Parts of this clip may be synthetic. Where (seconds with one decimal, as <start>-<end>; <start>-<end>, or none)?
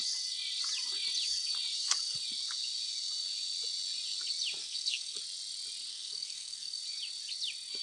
4.6-5.2; 5.9-6.8